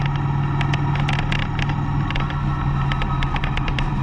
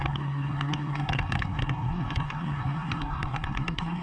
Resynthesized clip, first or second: second